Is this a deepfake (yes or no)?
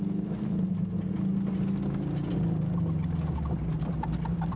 no